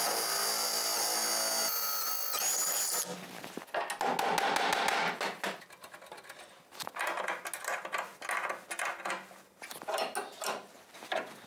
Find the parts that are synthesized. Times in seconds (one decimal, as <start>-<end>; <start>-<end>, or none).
none